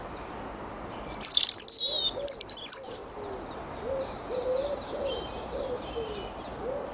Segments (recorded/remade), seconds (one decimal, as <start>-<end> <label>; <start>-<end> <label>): 0.0-4.6 recorded; 4.6-6.5 remade; 6.5-6.9 recorded